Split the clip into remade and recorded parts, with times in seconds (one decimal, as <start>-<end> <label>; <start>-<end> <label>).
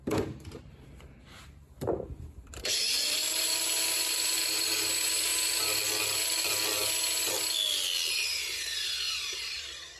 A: 0.0-5.3 remade; 5.3-8.1 recorded; 8.1-10.0 remade